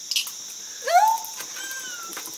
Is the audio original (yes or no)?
yes